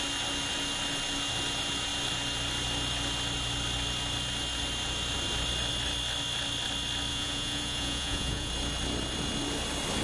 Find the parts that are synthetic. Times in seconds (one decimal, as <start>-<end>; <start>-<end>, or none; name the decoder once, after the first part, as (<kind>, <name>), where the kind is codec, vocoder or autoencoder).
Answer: 7.1-8.5 (vocoder, Vocos)